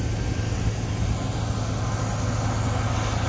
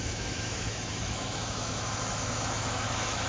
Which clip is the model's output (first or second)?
second